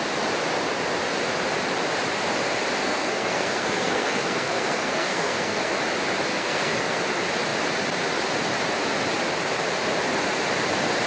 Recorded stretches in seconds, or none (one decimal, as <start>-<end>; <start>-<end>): 0.0-2.8; 5.8-6.3; 7.0-11.1